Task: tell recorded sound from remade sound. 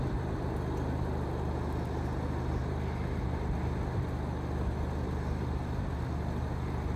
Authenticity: recorded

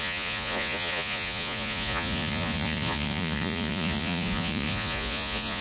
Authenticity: remade